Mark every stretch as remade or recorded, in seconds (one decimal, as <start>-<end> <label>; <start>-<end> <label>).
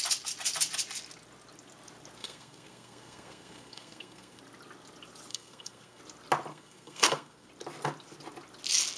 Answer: 0.0-2.2 recorded; 2.2-4.4 remade; 4.4-5.3 recorded; 5.3-6.0 remade; 6.0-6.5 recorded; 6.5-7.5 remade; 7.5-9.0 recorded